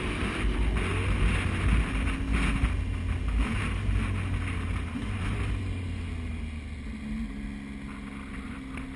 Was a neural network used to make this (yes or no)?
no